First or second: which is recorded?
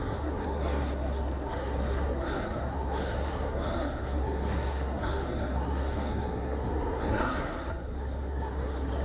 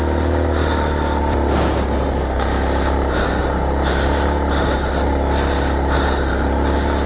second